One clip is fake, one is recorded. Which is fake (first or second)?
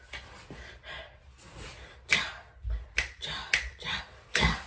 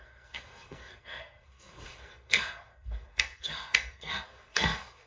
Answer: second